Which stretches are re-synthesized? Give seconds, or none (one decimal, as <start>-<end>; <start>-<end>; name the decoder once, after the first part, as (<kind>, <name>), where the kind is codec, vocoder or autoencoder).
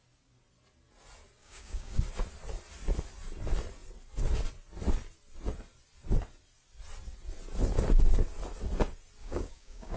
1.4-2.0 (codec, DAC); 9.2-10.0